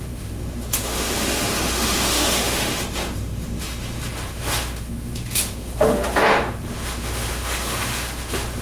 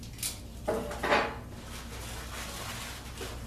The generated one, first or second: first